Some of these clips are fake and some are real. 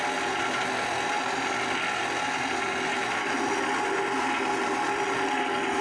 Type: real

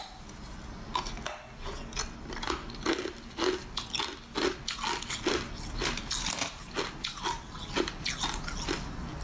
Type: real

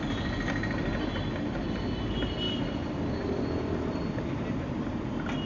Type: real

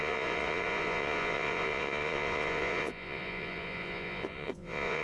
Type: fake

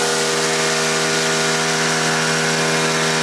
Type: real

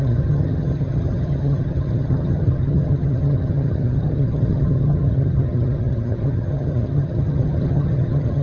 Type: fake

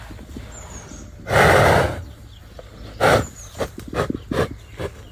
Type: real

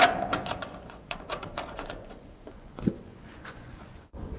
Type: fake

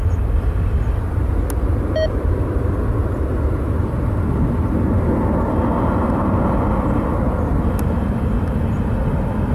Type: real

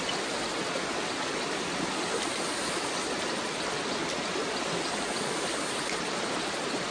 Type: real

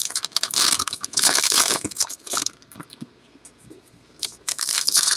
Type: fake